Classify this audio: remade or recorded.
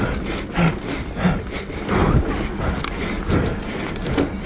recorded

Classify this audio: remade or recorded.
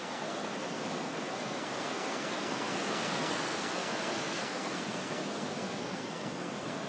remade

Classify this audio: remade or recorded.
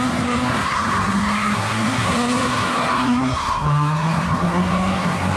remade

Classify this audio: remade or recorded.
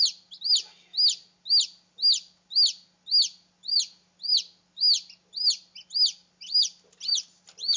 recorded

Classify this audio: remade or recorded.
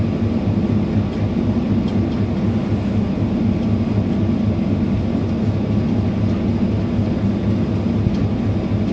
recorded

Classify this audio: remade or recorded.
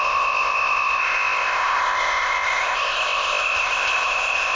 remade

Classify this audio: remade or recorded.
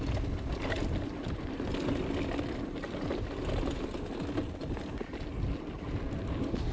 recorded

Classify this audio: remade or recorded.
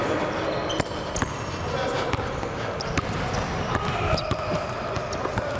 recorded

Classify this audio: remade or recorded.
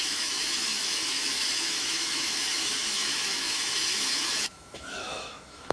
remade